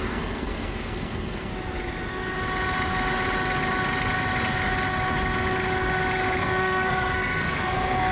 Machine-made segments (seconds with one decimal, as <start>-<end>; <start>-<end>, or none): 0.0-1.5; 6.4-8.1